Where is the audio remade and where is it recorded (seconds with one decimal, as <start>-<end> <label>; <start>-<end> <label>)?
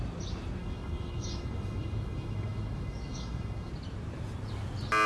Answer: 0.0-0.6 recorded; 0.6-3.7 remade; 3.7-5.1 recorded